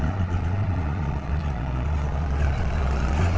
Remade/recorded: remade